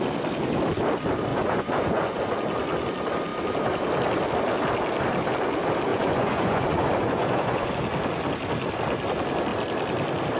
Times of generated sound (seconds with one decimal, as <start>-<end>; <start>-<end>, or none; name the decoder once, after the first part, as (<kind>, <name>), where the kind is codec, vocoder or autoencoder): 1.3-2.2 (vocoder, Vocos); 5.9-7.7